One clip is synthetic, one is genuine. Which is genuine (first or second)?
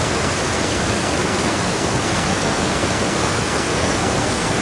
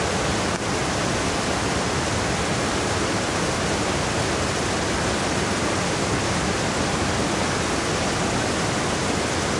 second